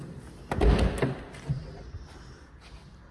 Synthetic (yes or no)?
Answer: no